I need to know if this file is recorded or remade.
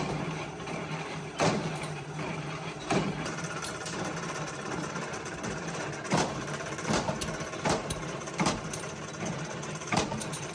remade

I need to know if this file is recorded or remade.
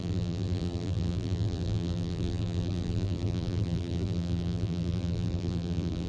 remade